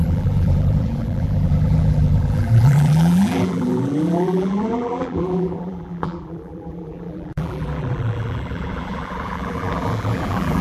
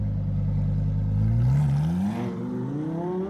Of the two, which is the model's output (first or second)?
first